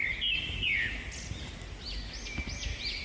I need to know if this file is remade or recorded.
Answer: recorded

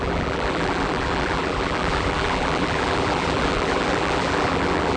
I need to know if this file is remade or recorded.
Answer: remade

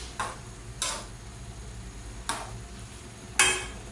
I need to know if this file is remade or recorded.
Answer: recorded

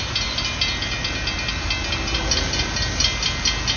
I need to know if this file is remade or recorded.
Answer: recorded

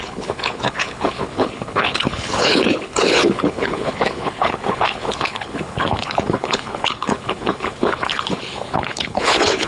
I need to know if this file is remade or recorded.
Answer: remade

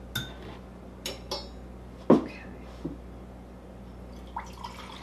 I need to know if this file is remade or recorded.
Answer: recorded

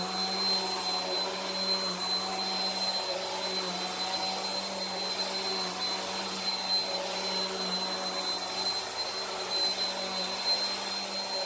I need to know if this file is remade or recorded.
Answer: recorded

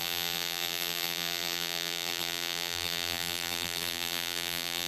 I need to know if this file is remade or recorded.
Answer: remade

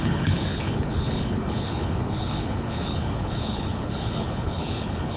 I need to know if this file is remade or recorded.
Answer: remade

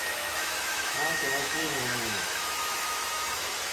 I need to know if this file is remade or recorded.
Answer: remade